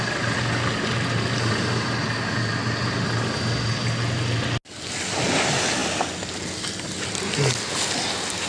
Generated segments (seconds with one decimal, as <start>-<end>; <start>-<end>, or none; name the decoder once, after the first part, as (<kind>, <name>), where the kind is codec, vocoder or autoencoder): none